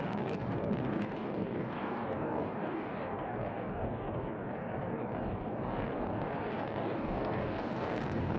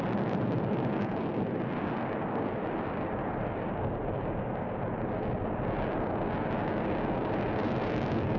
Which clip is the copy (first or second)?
first